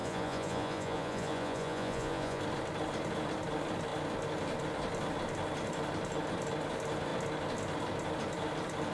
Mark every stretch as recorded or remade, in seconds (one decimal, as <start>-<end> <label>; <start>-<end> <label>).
0.0-2.4 remade; 2.4-8.9 recorded